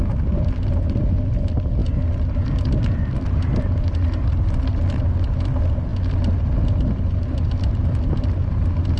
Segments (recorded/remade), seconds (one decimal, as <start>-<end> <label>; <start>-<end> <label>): 0.0-9.0 recorded